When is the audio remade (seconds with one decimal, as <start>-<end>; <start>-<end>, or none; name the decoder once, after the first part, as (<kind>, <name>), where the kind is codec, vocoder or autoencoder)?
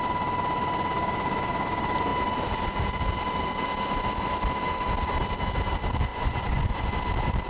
6.1-6.9 (vocoder, Vocos)